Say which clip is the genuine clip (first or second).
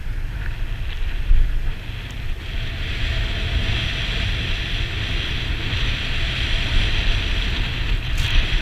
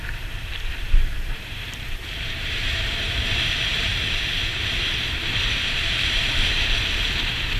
first